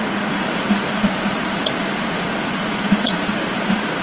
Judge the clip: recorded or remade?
remade